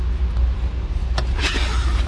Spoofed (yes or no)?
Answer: no